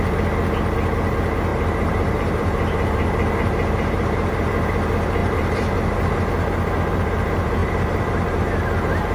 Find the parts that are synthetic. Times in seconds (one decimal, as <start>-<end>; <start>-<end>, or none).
1.5-4.5; 5.2-6.2; 7.6-8.6